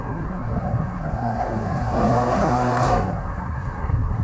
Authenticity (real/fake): fake